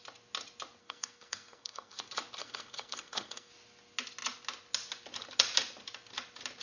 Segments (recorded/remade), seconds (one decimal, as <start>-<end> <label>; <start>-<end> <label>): 0.0-0.8 recorded; 0.8-2.0 remade; 2.0-2.4 recorded; 2.4-3.5 remade; 3.5-6.6 recorded